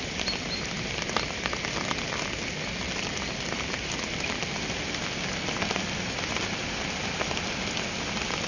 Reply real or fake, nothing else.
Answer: real